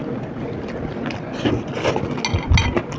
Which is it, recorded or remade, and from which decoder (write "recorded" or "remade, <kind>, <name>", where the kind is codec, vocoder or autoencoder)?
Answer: recorded